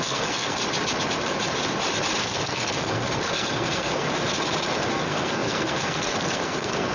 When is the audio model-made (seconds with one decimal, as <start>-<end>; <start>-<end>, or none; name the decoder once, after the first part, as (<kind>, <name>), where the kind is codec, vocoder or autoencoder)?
0.0-0.6 (codec, SNAC); 2.2-4.1; 4.9-6.9